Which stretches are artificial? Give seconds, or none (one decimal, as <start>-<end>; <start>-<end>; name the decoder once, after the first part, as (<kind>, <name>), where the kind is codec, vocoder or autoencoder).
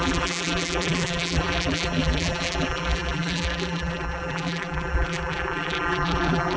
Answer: 0.0-6.6 (vocoder, BigVGAN v2)